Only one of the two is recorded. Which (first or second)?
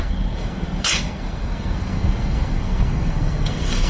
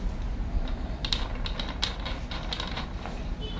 second